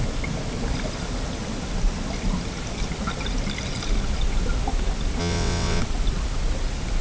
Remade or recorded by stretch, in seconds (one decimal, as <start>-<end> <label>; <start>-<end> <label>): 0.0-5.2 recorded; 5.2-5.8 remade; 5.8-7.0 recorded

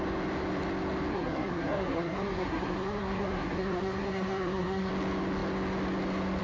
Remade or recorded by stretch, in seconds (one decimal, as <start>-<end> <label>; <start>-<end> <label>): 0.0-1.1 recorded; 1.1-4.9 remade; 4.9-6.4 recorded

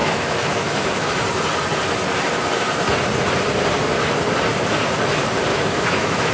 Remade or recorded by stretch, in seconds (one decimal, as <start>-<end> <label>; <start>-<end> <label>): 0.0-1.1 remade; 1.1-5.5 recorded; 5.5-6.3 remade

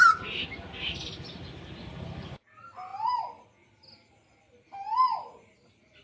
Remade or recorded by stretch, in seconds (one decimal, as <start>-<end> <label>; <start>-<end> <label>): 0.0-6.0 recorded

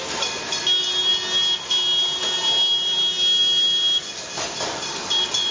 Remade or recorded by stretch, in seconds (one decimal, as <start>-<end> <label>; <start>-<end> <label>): 0.0-5.5 recorded

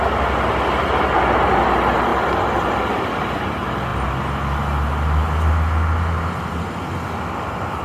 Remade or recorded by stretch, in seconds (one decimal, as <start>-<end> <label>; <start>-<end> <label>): 0.0-7.8 recorded

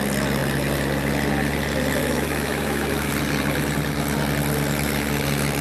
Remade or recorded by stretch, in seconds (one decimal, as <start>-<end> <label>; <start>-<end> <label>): 0.0-2.0 recorded; 2.0-3.1 remade; 3.1-5.6 recorded

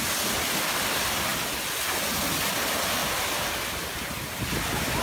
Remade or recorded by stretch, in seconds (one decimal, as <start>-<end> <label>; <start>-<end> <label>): 0.0-5.0 recorded